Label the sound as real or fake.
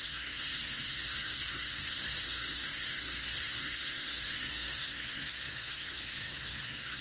fake